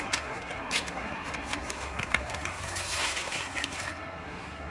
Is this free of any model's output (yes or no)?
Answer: no